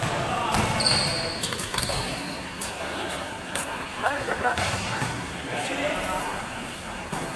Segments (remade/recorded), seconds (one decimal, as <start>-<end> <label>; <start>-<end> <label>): 0.0-1.4 recorded; 1.4-5.7 remade; 5.7-6.2 recorded; 6.2-7.4 remade